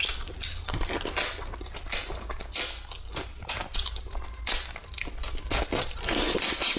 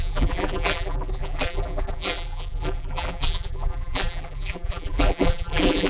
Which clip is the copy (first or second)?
second